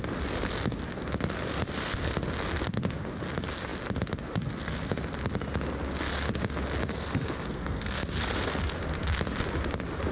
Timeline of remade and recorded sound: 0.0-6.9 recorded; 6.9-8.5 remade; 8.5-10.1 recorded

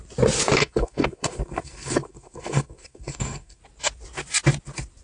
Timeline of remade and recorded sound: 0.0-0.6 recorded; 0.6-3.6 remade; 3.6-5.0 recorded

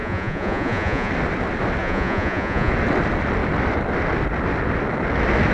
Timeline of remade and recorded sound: 0.0-1.1 remade; 1.1-1.8 recorded; 1.8-2.7 remade; 2.7-5.5 recorded

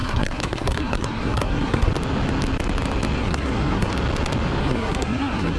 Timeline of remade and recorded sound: 0.0-1.9 remade; 1.9-3.2 recorded; 3.2-3.9 remade; 3.9-4.6 recorded; 4.6-5.6 remade